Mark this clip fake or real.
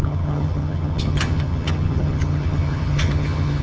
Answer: fake